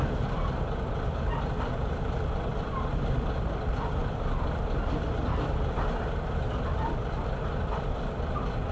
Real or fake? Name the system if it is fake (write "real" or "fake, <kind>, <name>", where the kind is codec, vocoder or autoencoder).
real